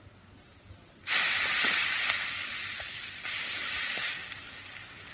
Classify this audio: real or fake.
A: real